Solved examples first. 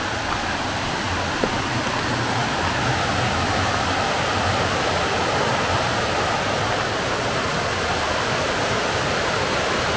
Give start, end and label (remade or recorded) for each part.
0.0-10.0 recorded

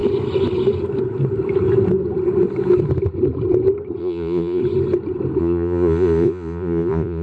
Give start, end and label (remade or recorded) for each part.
0.0-4.0 recorded; 4.0-4.6 remade; 4.6-5.4 recorded; 5.4-7.2 remade

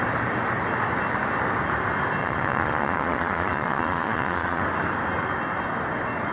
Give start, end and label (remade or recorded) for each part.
0.0-2.2 recorded; 2.2-4.6 remade; 4.6-6.3 recorded

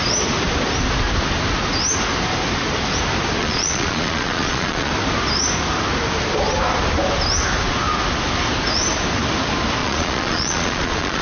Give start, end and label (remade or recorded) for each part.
0.0-3.4 recorded; 3.4-4.9 remade; 4.9-9.8 recorded; 9.8-11.2 remade

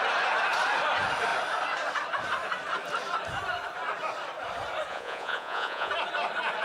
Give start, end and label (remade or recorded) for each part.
0.0-4.9 recorded; 4.9-5.9 remade; 5.9-6.6 recorded

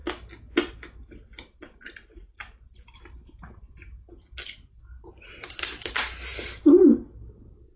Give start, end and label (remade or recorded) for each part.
0.0-7.8 recorded

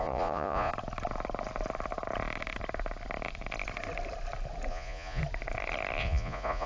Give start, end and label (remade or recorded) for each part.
0.0-0.7 remade; 0.7-4.7 recorded; 4.7-5.2 remade; 5.2-6.0 recorded; 6.0-6.7 remade

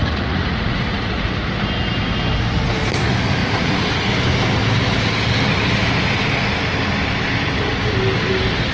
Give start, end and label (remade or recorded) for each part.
0.0-1.5 remade; 1.5-3.4 recorded; 3.4-4.0 remade; 4.0-8.7 recorded